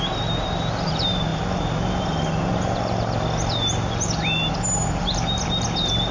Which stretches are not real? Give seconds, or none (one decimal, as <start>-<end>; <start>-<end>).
none